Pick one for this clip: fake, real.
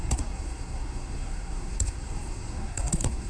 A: fake